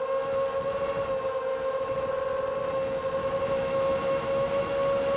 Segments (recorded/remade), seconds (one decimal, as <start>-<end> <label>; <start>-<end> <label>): 0.0-1.5 recorded; 1.5-2.1 remade; 2.1-3.2 recorded; 3.2-4.6 remade; 4.6-5.2 recorded